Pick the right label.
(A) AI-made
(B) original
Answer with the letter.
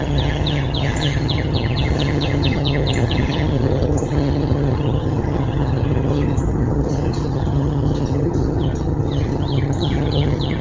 A